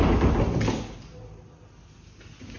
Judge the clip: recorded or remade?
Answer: recorded